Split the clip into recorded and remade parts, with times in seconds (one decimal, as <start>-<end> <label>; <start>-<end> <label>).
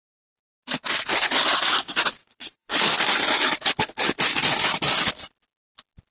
0.0-2.2 recorded; 2.2-2.8 remade; 2.8-6.1 recorded